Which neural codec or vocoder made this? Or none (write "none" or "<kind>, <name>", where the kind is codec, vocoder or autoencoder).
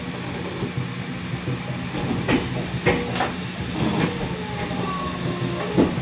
none